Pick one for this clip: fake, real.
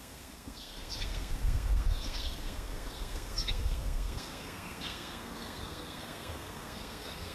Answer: fake